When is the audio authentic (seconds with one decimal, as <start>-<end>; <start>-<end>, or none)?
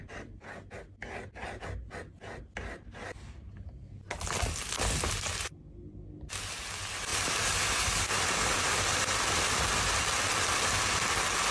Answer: 0.0-7.1; 11.1-11.5